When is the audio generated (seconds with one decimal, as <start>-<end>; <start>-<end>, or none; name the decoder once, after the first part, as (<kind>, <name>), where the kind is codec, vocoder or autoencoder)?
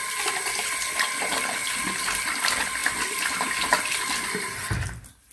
none